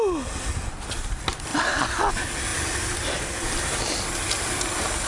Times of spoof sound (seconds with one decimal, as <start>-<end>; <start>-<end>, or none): none